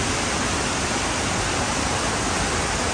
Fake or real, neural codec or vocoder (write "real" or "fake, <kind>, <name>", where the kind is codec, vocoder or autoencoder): real